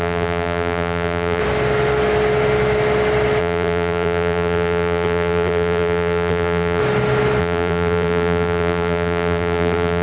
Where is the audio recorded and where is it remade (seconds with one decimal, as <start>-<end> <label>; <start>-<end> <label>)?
0.0-1.4 remade; 1.4-3.4 recorded; 3.4-6.8 remade; 6.8-7.4 recorded; 7.4-10.0 remade